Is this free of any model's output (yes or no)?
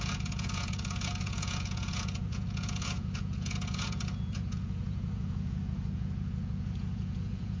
no